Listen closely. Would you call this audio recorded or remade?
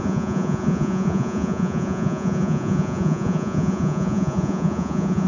remade